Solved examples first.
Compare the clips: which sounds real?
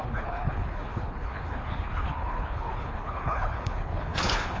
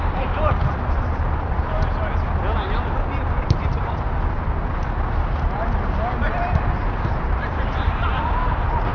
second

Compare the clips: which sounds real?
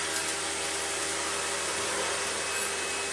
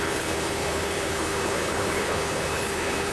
first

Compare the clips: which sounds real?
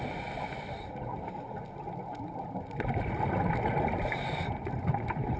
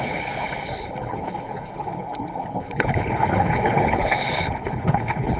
first